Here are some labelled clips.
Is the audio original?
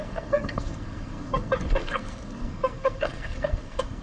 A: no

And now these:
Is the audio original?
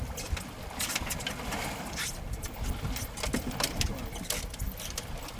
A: yes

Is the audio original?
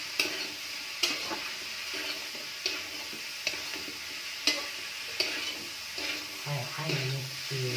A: yes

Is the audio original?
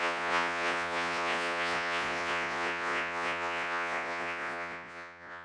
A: no